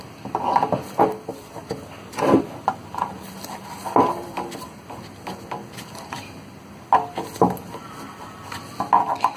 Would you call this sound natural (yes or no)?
yes